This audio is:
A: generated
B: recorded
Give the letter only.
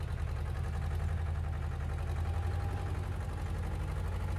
B